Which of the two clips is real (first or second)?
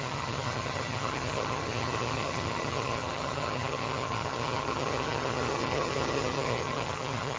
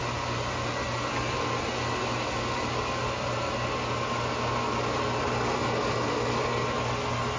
second